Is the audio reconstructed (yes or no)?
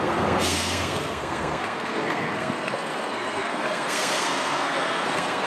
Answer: yes